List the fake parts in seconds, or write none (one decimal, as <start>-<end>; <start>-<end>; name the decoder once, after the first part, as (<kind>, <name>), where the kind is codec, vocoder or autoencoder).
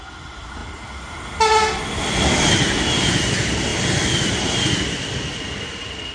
none